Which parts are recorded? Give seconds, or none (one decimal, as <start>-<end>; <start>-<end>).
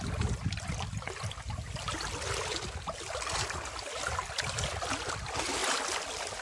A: 0.0-6.4